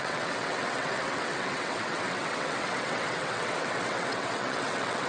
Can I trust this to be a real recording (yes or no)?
no